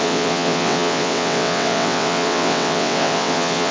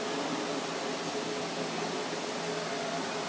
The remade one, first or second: first